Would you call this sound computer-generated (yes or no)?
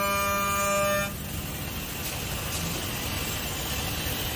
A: no